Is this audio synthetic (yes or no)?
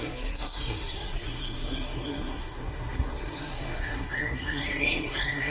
yes